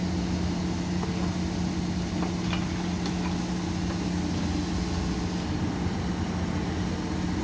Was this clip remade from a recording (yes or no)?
no